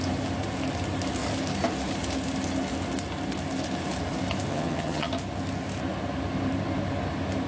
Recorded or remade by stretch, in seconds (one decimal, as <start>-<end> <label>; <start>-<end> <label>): 0.0-4.5 recorded; 4.5-5.1 remade; 5.1-7.5 recorded